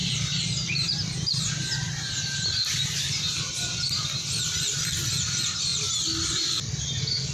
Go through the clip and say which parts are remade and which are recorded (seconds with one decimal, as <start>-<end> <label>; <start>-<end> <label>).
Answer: 0.0-3.5 remade; 3.5-7.3 recorded